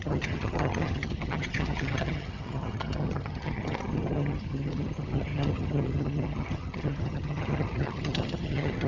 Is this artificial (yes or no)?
yes